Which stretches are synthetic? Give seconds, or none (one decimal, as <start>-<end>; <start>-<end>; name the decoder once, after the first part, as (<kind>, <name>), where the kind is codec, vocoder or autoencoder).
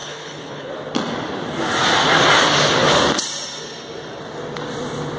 0.0-0.7 (codec, HILCodec)